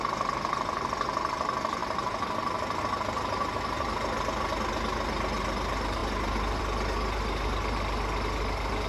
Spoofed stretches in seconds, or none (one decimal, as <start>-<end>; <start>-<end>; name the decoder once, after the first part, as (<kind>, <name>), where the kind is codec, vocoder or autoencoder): none